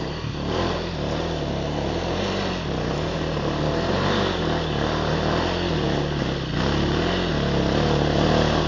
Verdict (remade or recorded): recorded